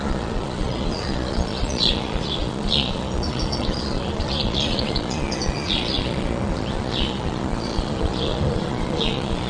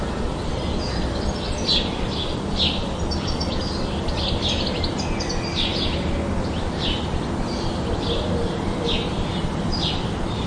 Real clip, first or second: second